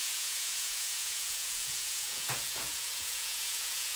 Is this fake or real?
fake